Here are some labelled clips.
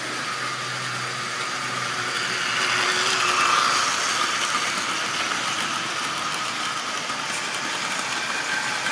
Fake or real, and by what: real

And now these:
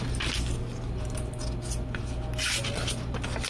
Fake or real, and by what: real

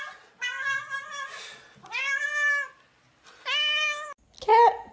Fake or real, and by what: real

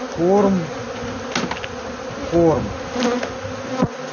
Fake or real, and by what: real